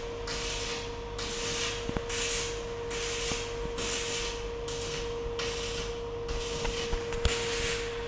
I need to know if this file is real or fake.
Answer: real